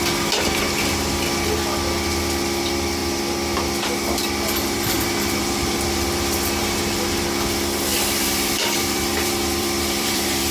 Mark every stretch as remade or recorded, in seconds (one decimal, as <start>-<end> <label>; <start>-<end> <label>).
0.0-7.9 recorded; 7.9-10.5 remade